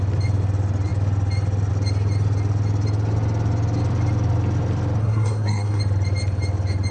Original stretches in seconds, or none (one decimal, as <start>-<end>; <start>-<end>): 0.0-5.0; 5.8-6.9